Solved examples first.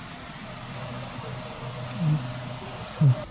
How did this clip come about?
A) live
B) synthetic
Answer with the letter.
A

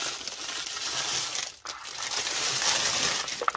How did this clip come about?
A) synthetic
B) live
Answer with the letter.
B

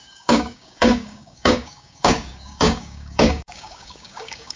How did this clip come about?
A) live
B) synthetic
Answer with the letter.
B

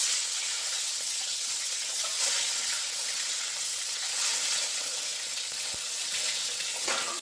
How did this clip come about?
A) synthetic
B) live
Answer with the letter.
A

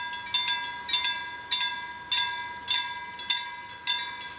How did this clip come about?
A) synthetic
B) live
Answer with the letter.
B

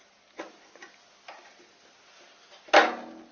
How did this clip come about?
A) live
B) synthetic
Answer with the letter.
A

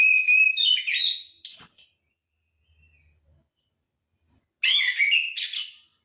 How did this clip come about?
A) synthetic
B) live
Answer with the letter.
B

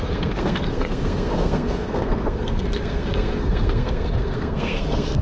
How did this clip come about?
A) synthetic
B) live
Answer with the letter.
A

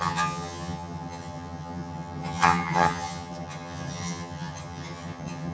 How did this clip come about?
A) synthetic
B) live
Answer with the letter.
A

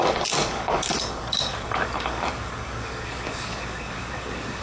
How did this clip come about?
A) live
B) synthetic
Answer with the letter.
B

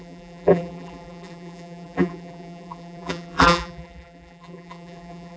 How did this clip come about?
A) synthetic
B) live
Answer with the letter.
A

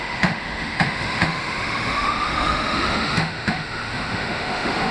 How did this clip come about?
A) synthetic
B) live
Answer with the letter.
A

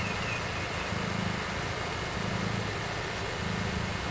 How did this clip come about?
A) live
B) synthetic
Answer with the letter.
A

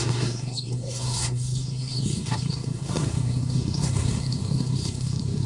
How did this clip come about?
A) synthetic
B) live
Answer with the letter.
A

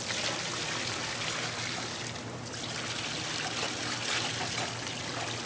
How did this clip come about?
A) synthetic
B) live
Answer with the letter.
B